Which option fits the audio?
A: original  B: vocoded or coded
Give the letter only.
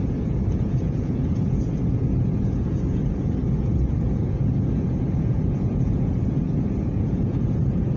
B